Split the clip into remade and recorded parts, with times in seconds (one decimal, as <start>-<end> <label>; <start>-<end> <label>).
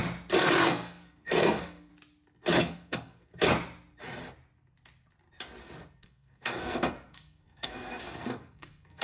0.0-0.6 recorded; 0.6-1.9 remade; 1.9-2.6 recorded; 2.6-3.3 remade; 3.3-6.0 recorded; 6.0-9.0 remade